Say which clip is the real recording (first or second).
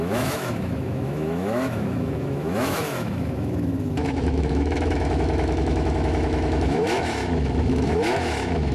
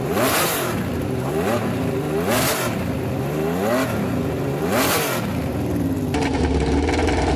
second